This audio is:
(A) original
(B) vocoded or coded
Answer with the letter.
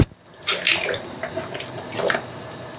A